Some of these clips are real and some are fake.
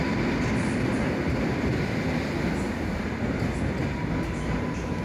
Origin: real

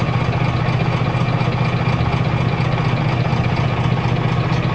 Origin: real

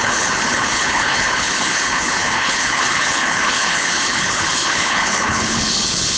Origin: fake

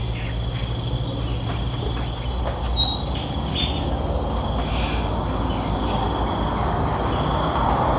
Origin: real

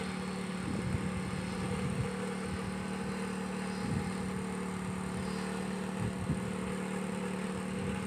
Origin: real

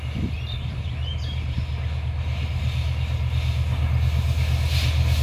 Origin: real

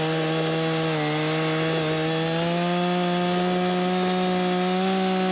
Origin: real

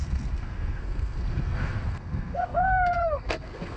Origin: fake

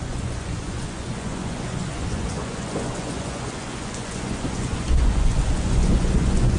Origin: fake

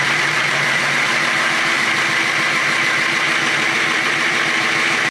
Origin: fake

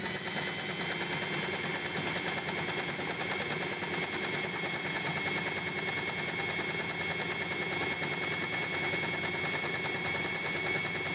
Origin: real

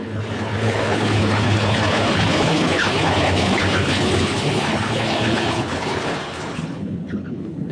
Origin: fake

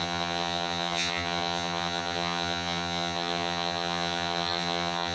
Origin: fake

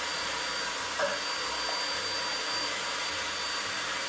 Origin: real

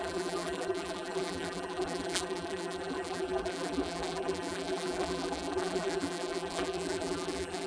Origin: fake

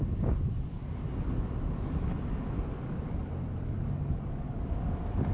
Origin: real